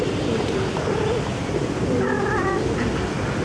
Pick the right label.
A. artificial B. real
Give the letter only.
B